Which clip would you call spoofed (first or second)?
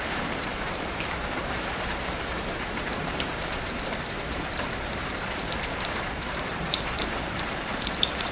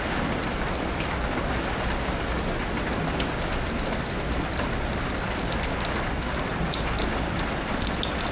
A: first